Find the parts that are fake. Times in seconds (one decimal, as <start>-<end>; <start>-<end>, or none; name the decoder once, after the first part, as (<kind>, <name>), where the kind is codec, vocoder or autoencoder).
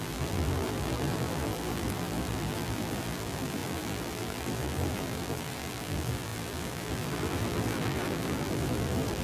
0.0-9.2 (vocoder, BigVGAN v2)